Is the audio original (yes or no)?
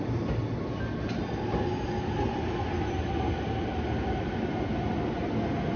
yes